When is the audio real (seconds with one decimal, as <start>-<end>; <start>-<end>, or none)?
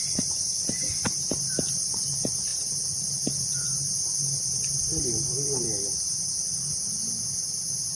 0.0-7.9